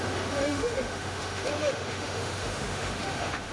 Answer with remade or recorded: remade